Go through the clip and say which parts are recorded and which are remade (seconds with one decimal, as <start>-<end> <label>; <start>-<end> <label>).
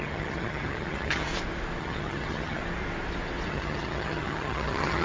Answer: 0.0-1.3 remade; 1.3-1.8 recorded; 1.8-2.6 remade; 2.6-3.5 recorded; 3.5-5.0 remade